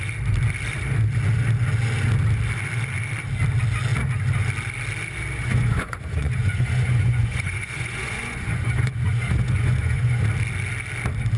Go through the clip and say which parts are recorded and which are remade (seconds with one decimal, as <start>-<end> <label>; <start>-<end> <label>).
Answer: 0.0-5.4 recorded; 5.4-10.2 remade; 10.2-11.4 recorded